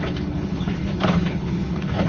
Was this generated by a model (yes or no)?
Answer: yes